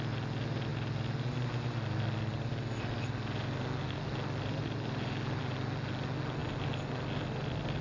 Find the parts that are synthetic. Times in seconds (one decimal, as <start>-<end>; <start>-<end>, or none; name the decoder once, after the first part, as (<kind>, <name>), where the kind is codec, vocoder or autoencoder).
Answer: none